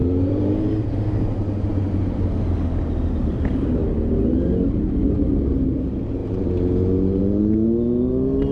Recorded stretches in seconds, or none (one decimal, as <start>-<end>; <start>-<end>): 0.9-8.5